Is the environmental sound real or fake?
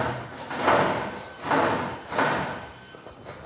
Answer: real